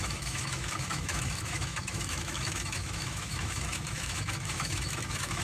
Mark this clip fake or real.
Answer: fake